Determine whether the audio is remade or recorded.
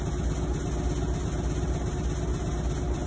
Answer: recorded